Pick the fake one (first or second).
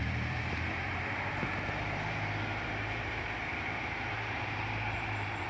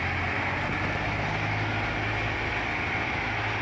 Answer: first